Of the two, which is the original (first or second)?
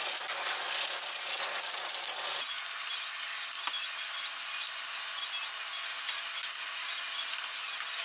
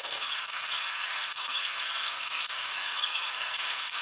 first